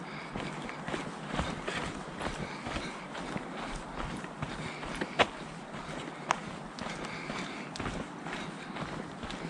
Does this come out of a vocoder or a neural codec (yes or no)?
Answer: no